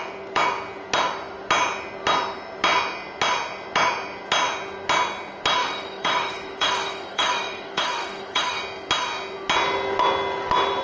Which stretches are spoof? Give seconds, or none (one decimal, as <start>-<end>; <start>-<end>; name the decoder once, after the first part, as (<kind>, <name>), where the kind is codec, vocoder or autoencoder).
5.6-8.6 (autoencoder, DAC-VAE)